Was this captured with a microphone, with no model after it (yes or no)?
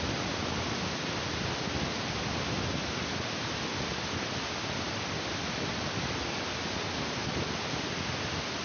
yes